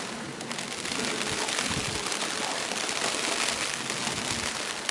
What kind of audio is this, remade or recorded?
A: recorded